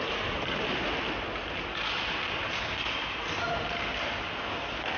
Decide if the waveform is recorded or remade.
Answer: recorded